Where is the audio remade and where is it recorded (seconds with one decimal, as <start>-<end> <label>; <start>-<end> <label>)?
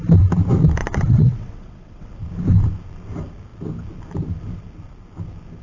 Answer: 0.0-0.8 recorded; 0.8-2.1 remade; 2.1-5.6 recorded